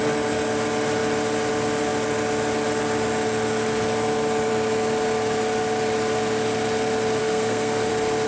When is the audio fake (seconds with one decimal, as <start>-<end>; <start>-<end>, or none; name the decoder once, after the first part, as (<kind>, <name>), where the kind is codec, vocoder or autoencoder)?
7.2-7.9 (codec, SNAC)

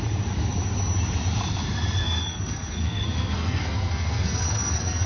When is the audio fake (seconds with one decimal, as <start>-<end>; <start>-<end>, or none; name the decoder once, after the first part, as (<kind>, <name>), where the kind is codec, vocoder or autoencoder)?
2.0-5.1 (codec, SNAC)

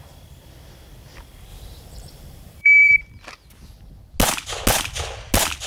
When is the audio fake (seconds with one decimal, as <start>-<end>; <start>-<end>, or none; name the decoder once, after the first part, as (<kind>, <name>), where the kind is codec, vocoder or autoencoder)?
1.5-2.9 (vocoder, BigVGAN v2)

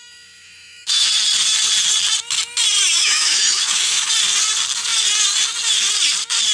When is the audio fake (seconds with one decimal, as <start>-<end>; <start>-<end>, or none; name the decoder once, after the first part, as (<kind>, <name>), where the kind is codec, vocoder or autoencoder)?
0.0-1.1 (autoencoder, DAC-VAE); 3.0-4.1

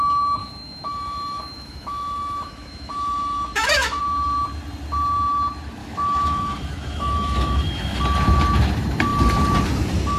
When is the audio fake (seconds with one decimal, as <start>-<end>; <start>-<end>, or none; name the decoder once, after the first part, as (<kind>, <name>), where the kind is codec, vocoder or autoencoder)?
0.4-4.0 (autoencoder, DAC-VAE); 5.8-8.0

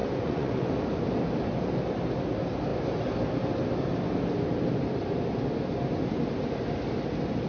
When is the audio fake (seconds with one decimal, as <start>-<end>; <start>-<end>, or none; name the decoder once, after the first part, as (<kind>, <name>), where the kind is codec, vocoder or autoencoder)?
0.0-0.7 (vocoder, Vocos)